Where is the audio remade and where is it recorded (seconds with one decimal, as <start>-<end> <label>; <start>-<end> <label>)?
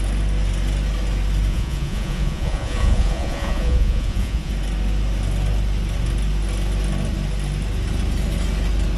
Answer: 0.0-1.5 recorded; 1.5-4.5 remade; 4.5-9.0 recorded